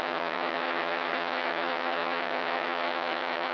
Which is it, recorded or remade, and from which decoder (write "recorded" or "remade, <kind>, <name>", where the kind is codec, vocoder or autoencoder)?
remade, vocoder, HiFi-GAN